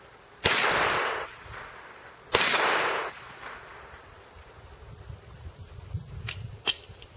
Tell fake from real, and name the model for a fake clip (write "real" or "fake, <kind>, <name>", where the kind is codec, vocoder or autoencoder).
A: fake, vocoder, BigVGAN v2